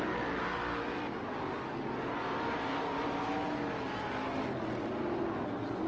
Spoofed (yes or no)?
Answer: no